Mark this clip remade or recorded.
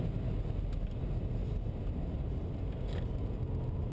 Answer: recorded